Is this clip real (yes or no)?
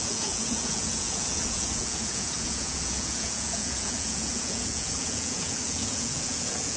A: no